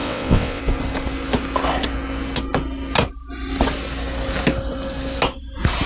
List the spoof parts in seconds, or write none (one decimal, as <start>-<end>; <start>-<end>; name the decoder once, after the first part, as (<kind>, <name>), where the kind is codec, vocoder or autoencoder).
0.0-0.6 (vocoder, WaveNeXt)